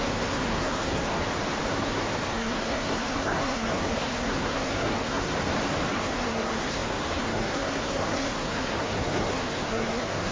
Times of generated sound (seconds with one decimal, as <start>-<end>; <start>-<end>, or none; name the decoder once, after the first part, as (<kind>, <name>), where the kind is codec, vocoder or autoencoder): 0.0-1.2 (codec, SNAC); 1.7-5.3; 5.9-10.3